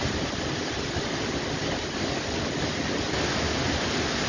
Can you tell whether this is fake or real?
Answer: real